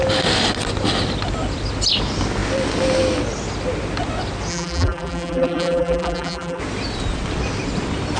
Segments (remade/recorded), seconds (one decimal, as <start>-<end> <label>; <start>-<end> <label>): 0.0-4.5 recorded; 4.5-6.6 remade; 6.6-8.2 recorded